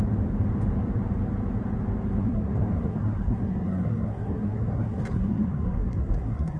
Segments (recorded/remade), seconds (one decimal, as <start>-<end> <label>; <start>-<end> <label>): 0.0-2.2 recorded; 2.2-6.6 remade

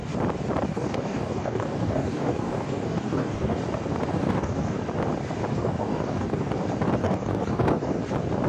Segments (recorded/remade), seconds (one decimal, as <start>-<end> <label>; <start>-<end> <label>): 0.0-0.7 recorded; 0.7-3.6 remade; 3.6-4.1 recorded; 4.1-4.8 remade; 4.8-5.5 recorded; 5.5-6.5 remade; 6.5-7.0 recorded; 7.0-8.0 remade; 8.0-8.5 recorded

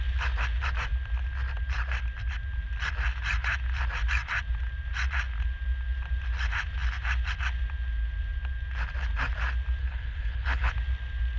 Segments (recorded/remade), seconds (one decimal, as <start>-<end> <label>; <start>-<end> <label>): 0.0-9.8 recorded; 9.8-10.7 remade; 10.7-11.4 recorded